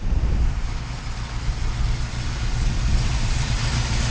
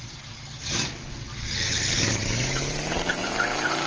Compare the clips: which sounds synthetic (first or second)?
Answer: second